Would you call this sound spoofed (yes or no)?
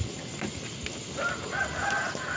no